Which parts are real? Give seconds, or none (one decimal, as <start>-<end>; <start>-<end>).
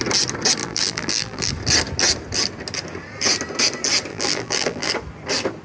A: 0.0-0.6; 1.5-4.1; 4.9-5.6